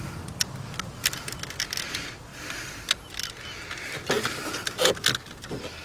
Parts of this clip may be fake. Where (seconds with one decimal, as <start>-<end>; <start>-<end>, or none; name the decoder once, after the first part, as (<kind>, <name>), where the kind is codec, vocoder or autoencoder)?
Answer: none